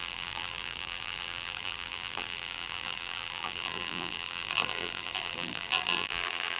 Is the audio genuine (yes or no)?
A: no